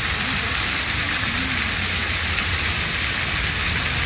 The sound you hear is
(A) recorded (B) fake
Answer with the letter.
A